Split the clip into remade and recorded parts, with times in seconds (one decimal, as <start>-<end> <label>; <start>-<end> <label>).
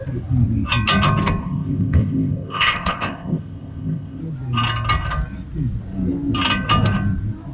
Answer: 0.0-1.4 recorded; 1.4-4.2 remade; 4.2-7.5 recorded